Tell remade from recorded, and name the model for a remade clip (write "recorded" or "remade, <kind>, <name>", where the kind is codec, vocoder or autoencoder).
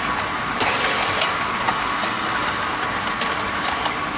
recorded